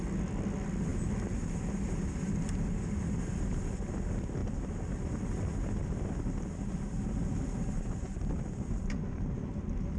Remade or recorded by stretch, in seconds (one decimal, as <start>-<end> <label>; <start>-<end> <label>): 0.0-10.0 recorded